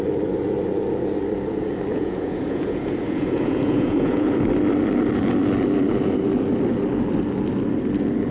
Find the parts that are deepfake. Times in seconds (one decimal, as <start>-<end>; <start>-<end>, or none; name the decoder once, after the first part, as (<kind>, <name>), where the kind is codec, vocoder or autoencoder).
1.9-4.5 (vocoder, Vocos)